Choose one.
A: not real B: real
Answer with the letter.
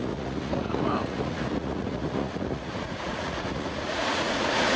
A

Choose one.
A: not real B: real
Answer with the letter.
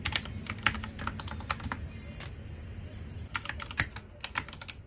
B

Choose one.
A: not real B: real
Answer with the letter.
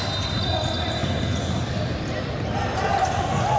B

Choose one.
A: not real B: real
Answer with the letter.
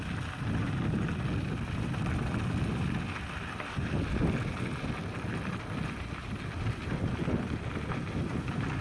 B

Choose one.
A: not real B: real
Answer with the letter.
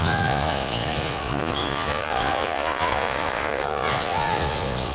A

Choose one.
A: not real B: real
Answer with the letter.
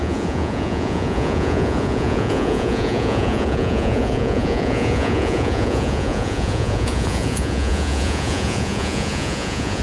A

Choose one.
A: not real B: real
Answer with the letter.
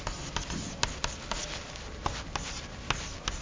B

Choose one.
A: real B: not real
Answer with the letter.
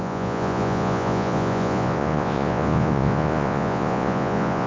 B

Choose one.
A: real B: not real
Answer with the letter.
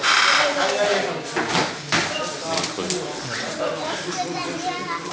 A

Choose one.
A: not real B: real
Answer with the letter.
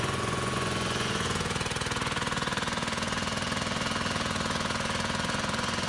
A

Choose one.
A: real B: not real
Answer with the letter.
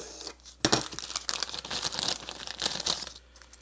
A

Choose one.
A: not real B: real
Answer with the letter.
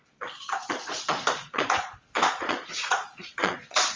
A